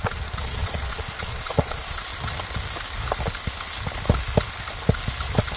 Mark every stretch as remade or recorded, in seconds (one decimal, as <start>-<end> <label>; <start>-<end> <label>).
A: 0.0-2.1 remade; 2.1-5.6 recorded